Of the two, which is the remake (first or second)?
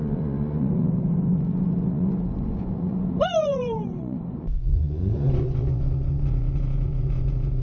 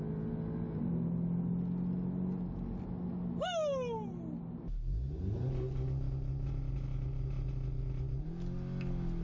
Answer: first